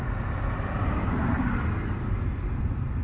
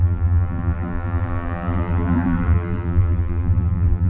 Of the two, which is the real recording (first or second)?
first